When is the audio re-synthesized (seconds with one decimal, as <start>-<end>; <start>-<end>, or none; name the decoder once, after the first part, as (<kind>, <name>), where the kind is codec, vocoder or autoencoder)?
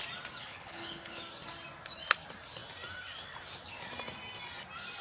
0.4-1.2 (codec, HILCodec)